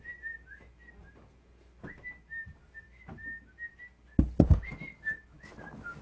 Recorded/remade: recorded